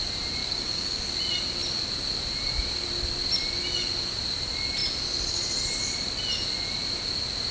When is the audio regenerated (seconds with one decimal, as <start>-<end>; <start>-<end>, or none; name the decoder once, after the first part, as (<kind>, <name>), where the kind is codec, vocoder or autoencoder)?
0.4-1.0 (codec, DAC)